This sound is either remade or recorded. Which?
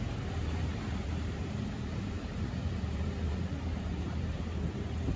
remade